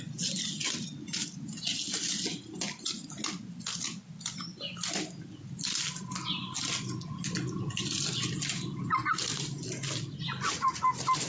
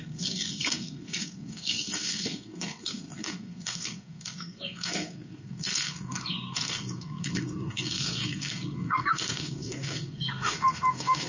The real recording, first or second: first